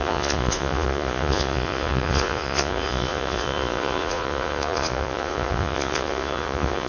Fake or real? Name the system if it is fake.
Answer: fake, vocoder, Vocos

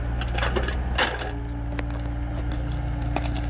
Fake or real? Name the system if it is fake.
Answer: real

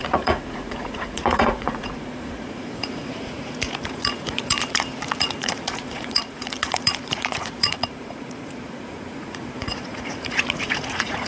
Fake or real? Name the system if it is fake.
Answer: fake, vocoder, Vocos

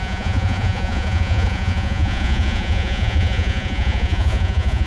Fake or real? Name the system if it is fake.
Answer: fake, vocoder, Vocos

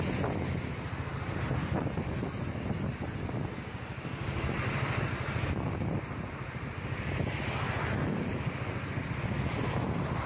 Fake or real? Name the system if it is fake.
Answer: real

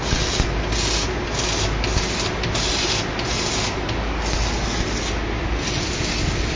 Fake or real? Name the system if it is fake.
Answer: real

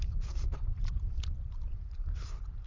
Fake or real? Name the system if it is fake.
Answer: real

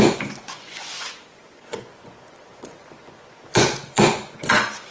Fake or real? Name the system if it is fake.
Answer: fake, vocoder, Vocos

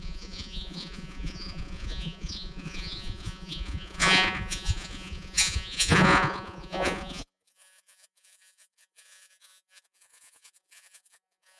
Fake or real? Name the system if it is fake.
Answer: fake, vocoder, Vocos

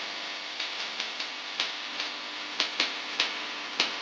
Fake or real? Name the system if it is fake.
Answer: real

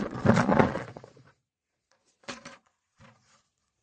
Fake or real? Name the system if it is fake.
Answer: fake, vocoder, Vocos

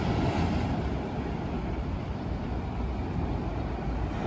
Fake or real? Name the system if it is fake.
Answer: real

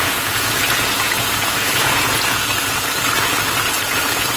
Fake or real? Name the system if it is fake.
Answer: fake, vocoder, Vocos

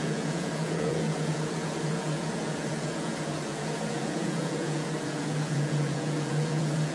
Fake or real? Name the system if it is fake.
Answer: fake, vocoder, Vocos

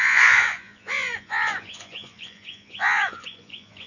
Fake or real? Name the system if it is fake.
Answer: fake, vocoder, Vocos